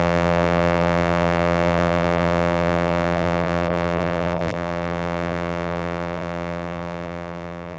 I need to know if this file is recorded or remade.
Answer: remade